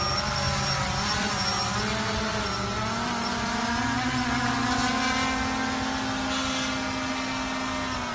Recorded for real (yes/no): yes